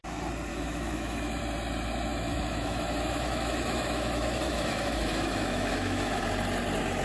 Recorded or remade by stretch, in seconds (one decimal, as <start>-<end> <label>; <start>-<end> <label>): 0.0-0.5 recorded; 0.5-1.4 remade; 1.4-2.1 recorded; 2.1-6.2 remade; 6.2-7.0 recorded